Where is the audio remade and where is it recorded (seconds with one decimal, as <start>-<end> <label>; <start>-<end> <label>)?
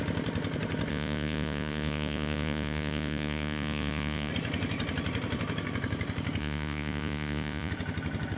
0.0-0.9 recorded; 0.9-4.3 remade; 4.3-6.4 recorded; 6.4-7.7 remade; 7.7-8.4 recorded